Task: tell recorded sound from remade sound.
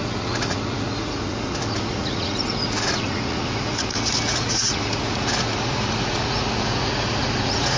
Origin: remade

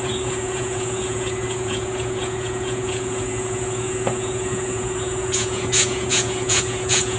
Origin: remade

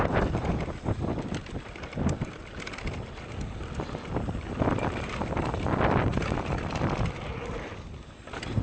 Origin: recorded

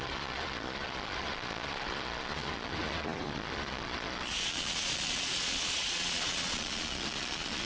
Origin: remade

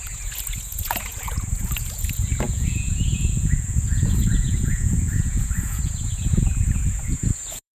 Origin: remade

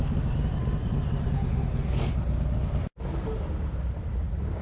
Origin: recorded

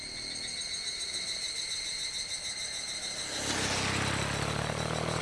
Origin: recorded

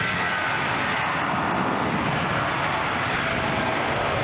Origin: recorded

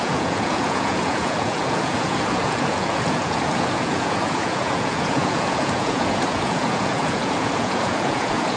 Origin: remade